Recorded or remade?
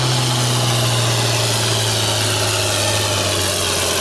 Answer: recorded